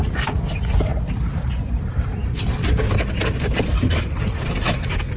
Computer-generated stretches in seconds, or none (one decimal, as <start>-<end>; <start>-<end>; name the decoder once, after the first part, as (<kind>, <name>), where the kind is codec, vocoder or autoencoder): none